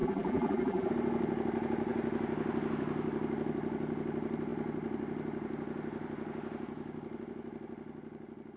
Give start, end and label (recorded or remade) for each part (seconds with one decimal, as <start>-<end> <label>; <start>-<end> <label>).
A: 0.0-0.9 remade; 0.9-8.6 recorded